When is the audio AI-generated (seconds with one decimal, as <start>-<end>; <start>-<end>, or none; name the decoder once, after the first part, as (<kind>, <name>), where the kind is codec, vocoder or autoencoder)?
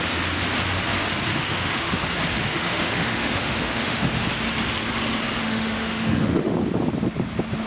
1.3-1.9 (autoencoder, DAC-VAE); 2.3-4.1; 5.4-6.5